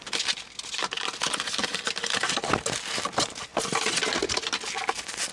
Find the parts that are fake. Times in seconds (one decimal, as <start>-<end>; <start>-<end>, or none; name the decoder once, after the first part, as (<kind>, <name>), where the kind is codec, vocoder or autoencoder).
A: 3.5-4.6 (vocoder, BigVGAN v2)